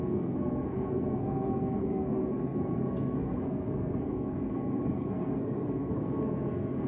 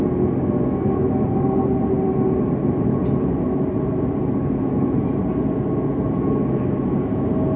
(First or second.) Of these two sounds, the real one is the second